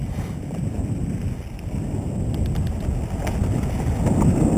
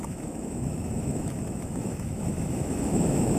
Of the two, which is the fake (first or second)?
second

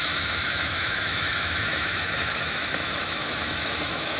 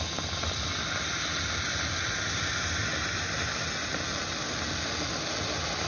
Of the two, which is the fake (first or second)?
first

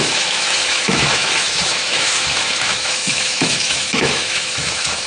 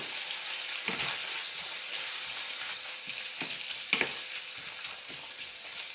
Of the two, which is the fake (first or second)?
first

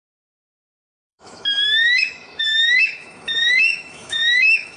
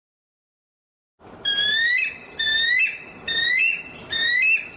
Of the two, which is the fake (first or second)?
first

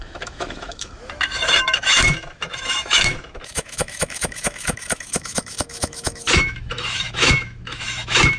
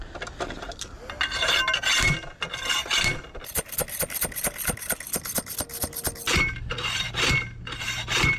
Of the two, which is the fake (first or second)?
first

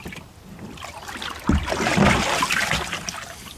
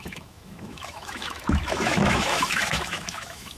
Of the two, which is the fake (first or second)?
second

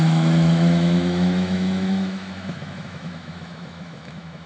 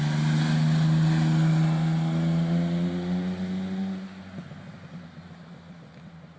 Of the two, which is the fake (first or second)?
first